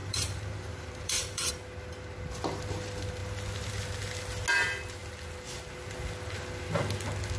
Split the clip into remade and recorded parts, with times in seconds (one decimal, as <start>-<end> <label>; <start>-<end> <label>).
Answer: 0.0-1.5 remade; 1.5-7.4 recorded